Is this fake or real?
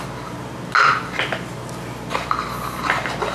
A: real